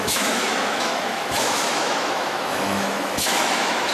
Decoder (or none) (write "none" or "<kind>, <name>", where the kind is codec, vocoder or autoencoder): autoencoder, DAC-VAE